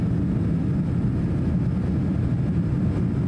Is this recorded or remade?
recorded